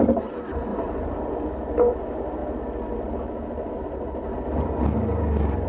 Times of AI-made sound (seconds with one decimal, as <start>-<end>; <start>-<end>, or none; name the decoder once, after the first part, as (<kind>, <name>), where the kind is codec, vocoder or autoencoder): 0.0-2.4 (vocoder, BigVGAN v2); 3.7-4.3